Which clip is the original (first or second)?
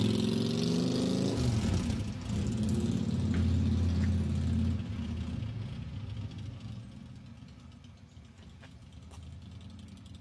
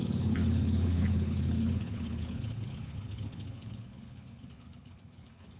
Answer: first